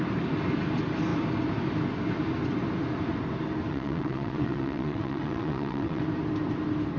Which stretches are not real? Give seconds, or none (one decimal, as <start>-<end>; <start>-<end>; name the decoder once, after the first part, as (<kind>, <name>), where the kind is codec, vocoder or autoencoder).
3.7-6.0 (vocoder, WaveNeXt)